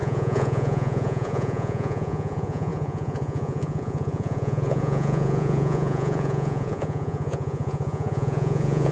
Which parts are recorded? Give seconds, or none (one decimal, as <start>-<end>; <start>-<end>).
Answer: none